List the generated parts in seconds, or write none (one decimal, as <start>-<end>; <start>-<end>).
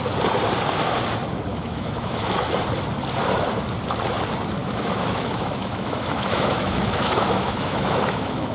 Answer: 1.5-2.3; 4.6-8.5